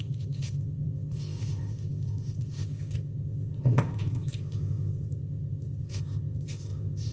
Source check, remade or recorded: remade